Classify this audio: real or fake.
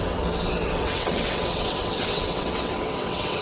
fake